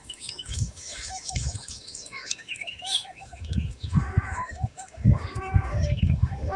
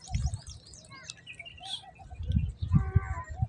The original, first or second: second